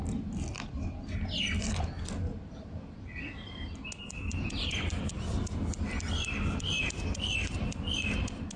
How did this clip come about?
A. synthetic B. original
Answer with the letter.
B